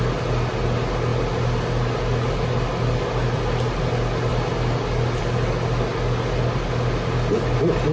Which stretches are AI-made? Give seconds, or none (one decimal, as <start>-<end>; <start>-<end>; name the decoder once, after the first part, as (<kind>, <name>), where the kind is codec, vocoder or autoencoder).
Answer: none